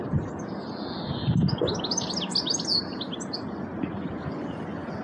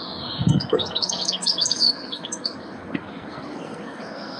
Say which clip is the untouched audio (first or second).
first